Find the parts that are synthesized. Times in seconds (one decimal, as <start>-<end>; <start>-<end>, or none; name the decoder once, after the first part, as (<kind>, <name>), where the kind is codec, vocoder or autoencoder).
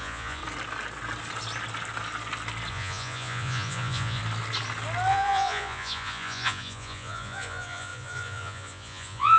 0.0-0.4 (vocoder, Vocos); 2.7-4.2; 5.1-9.4